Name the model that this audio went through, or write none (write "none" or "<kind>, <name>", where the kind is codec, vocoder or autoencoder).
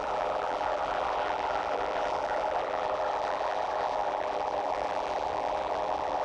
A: vocoder, BigVGAN v2